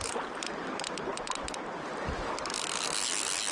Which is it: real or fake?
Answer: real